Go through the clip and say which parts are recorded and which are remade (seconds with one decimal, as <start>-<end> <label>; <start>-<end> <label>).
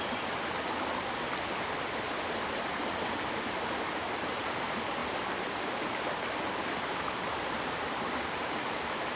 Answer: 0.0-9.2 recorded